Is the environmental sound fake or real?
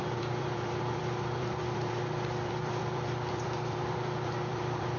fake